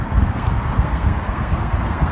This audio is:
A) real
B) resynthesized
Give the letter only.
B